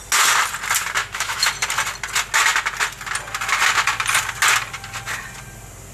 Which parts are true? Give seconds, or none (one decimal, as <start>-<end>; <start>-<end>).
0.0-1.0; 1.5-5.9